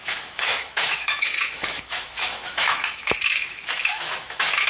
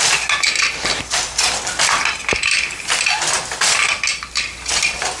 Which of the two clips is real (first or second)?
second